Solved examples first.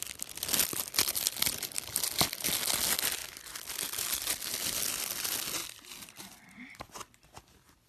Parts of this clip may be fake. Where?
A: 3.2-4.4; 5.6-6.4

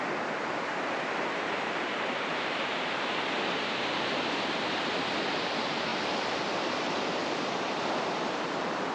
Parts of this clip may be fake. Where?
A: 0.7-2.7; 7.2-8.9

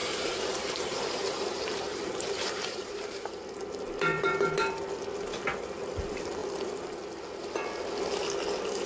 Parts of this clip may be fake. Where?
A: 0.0-3.3; 4.1-4.8

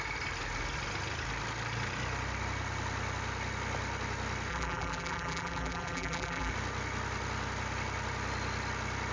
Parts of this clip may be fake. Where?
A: 4.5-6.5

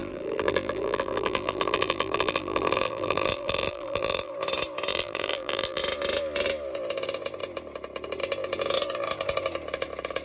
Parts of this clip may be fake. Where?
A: 0.0-4.3; 4.9-5.8

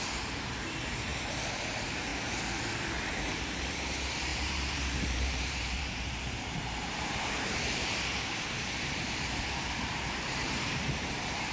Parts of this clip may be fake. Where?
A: 0.0-2.1; 3.0-11.5

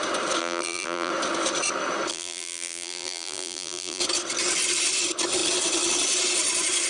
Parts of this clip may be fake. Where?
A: 0.4-1.1; 2.1-4.0